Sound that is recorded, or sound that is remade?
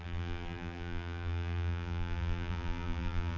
remade